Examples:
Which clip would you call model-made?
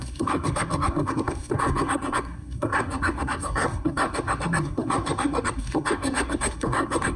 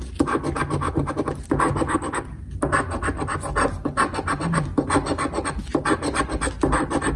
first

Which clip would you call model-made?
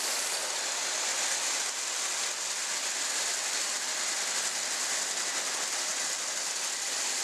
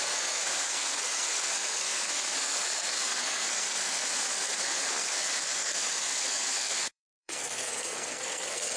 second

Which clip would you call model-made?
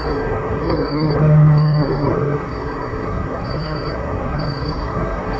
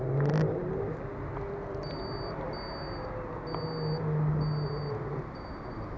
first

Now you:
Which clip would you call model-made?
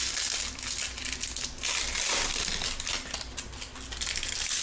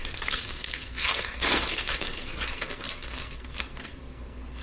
second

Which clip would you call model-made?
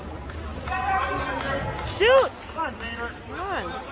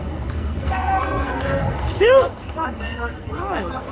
second